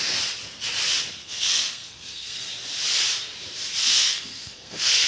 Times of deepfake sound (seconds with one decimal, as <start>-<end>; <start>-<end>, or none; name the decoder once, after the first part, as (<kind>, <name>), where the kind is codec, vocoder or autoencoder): 1.2-2.5 (codec, SNAC); 3.8-5.1